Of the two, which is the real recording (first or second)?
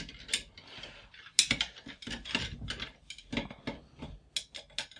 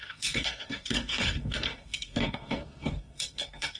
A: first